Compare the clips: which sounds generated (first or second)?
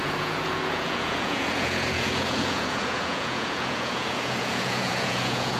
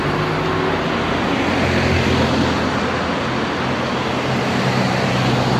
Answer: first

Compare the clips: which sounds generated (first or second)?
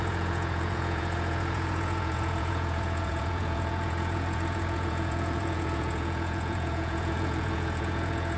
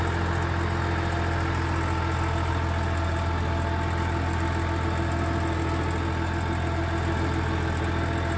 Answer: first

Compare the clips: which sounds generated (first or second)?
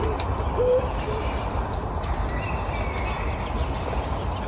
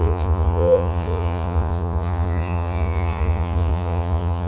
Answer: second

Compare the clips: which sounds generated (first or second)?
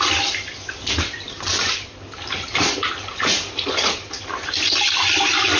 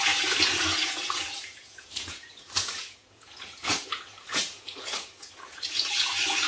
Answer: second